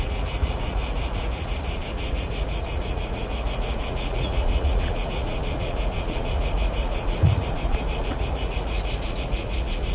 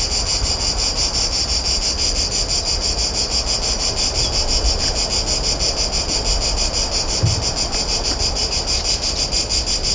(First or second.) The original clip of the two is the second